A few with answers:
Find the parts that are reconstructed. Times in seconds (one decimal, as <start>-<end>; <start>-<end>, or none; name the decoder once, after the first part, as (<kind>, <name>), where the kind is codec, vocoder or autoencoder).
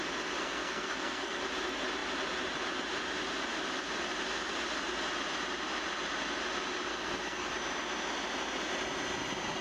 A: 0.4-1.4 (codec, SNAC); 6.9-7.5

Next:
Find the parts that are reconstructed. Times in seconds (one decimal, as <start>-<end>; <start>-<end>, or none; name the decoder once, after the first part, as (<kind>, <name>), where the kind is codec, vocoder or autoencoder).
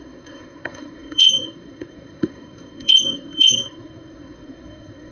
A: 0.0-5.1 (codec, SNAC)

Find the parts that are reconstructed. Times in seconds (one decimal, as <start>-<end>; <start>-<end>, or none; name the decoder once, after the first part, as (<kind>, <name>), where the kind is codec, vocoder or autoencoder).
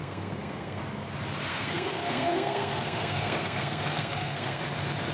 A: 0.0-0.8 (codec, SNAC); 1.5-4.6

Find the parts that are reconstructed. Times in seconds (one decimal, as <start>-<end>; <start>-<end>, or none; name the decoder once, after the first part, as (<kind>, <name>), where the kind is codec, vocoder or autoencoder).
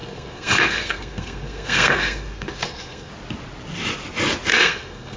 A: 0.0-3.1 (codec, SNAC); 4.5-5.2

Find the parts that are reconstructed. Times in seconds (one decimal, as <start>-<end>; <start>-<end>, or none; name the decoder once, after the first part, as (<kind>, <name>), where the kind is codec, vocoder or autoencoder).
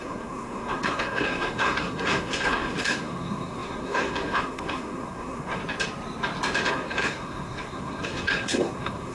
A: 0.0-5.6 (codec, SNAC); 6.7-9.1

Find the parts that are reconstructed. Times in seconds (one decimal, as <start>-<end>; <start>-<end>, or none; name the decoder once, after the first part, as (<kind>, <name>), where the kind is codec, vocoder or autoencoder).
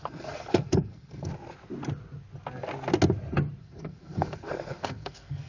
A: 0.0-1.3 (codec, SNAC); 3.6-5.5